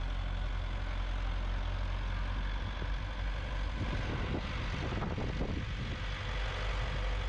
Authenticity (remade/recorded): recorded